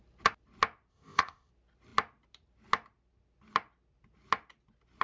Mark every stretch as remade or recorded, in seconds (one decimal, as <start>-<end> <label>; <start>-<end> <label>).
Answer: 0.0-0.9 recorded; 0.9-1.5 remade; 1.5-5.0 recorded